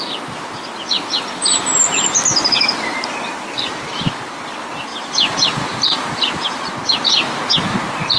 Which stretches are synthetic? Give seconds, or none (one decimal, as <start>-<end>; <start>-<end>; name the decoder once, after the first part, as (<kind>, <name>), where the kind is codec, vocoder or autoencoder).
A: 4.9-6.7 (vocoder, BigVGAN v2)